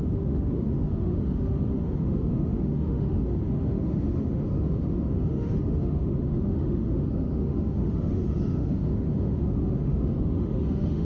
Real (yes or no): no